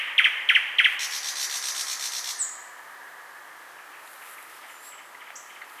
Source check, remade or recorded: recorded